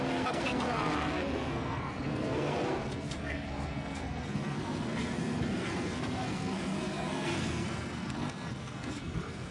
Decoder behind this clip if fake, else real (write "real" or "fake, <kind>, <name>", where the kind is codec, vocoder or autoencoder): fake, codec, SNAC